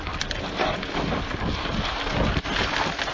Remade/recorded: recorded